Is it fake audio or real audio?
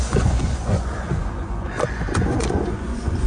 fake